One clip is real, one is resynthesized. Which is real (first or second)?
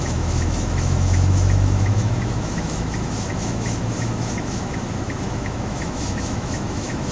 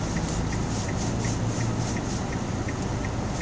second